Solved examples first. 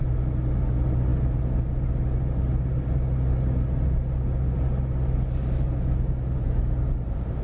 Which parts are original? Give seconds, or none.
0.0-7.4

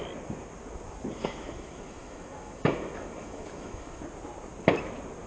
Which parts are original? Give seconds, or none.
0.0-1.2; 4.0-5.3

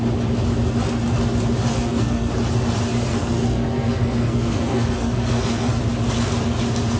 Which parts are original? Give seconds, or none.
0.0-1.7; 2.3-3.1; 5.8-7.0

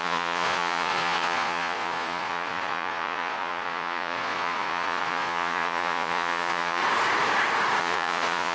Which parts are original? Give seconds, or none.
6.8-7.8